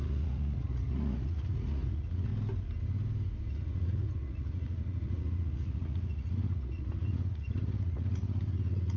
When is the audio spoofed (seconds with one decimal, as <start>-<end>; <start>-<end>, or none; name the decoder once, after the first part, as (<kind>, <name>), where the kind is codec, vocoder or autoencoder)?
0.0-2.3 (vocoder, Vocos); 3.5-9.0